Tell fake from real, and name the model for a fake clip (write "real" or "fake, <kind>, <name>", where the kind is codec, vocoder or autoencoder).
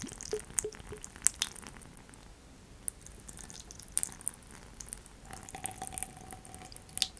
real